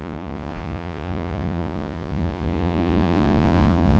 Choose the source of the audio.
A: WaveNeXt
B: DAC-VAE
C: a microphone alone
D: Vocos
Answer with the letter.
D